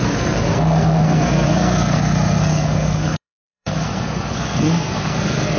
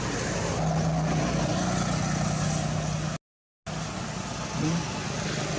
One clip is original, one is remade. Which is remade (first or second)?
first